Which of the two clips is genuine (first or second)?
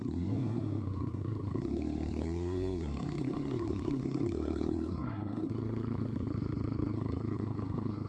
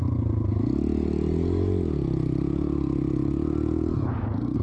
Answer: second